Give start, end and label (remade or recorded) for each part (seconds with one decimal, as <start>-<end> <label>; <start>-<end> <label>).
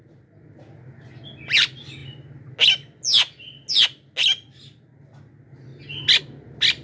0.0-6.8 recorded